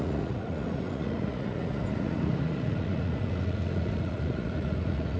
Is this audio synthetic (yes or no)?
yes